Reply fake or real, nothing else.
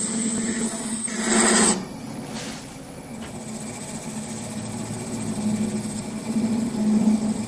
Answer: real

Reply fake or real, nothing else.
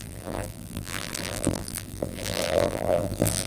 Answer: fake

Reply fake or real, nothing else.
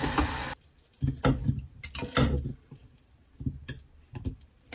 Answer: real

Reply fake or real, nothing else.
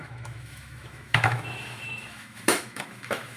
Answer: fake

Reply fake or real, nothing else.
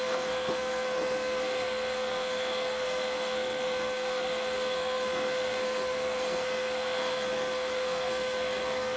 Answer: fake